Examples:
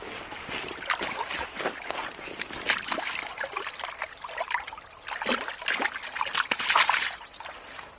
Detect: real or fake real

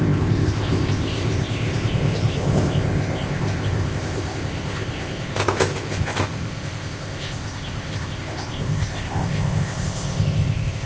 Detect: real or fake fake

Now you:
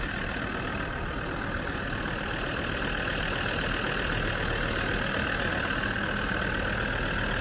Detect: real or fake real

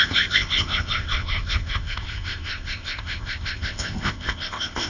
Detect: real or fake fake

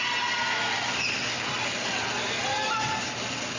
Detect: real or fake real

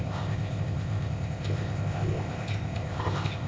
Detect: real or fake fake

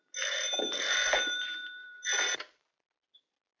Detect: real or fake real